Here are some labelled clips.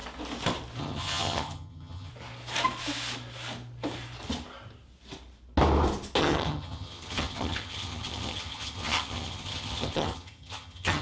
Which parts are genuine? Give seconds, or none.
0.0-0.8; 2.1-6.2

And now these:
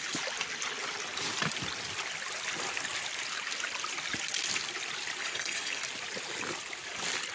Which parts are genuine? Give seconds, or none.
0.0-5.2; 5.8-7.3